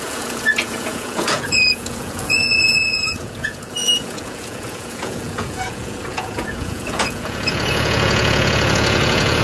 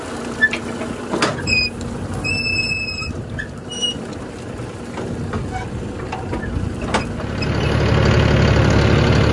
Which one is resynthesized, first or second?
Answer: first